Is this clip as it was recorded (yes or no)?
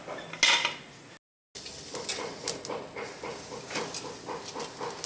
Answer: yes